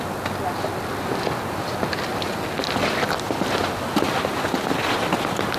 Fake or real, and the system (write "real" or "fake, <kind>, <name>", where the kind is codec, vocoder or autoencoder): real